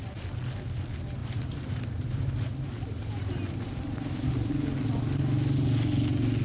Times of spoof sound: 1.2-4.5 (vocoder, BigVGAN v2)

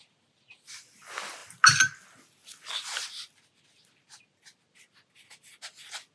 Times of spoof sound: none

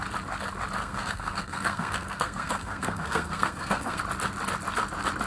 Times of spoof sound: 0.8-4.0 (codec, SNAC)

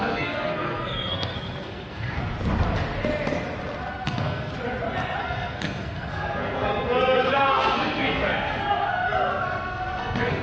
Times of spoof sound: 0.0-2.2 (codec, SNAC); 3.9-4.5; 5.2-10.4

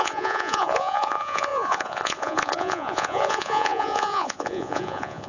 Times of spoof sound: 0.0-5.3 (vocoder, Vocos)